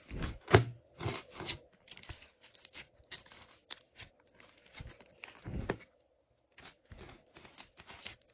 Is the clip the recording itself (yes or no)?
yes